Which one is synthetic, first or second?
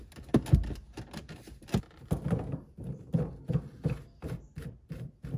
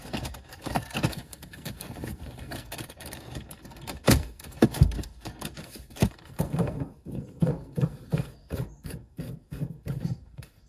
second